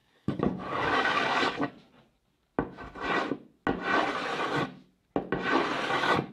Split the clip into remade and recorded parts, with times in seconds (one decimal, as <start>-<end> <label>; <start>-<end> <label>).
0.0-1.7 remade; 1.7-6.3 recorded